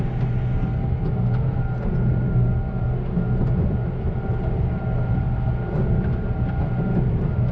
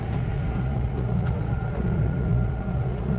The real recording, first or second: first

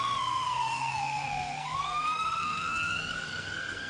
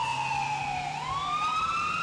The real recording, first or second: second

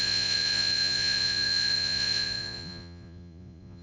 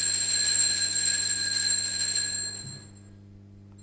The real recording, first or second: second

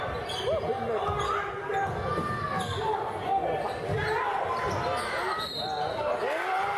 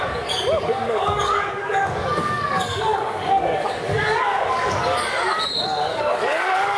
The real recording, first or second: first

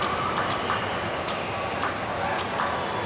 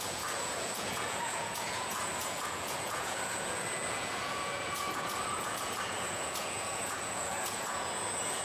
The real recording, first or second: first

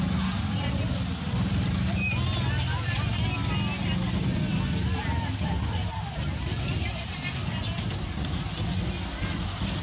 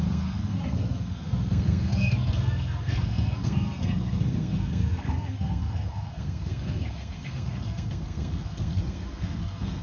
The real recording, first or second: first